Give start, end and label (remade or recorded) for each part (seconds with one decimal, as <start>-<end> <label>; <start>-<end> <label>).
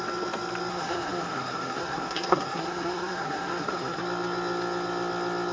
0.0-0.7 recorded; 0.7-4.0 remade; 4.0-5.5 recorded